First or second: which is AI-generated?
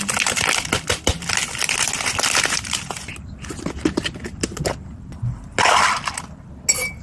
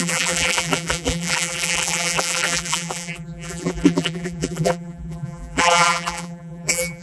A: second